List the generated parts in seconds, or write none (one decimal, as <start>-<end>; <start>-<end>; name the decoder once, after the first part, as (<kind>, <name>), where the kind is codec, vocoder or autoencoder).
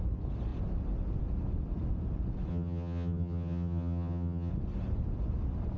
2.5-4.5 (vocoder, HiFi-GAN)